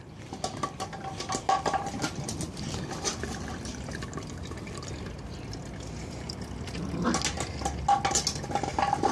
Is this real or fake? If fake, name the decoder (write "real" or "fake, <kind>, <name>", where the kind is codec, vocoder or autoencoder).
real